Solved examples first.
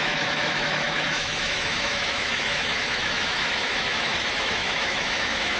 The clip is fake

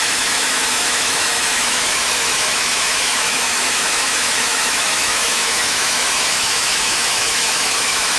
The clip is fake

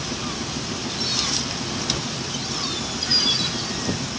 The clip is real